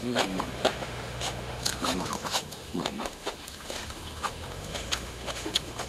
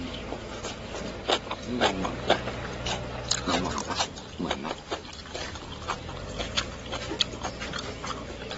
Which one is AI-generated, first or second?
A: first